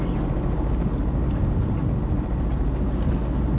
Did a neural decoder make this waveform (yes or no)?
no